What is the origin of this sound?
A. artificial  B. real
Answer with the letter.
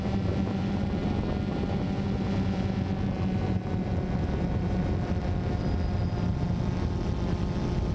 B